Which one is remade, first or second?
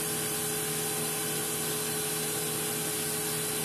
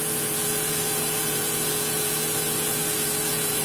second